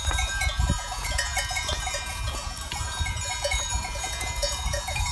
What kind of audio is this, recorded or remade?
remade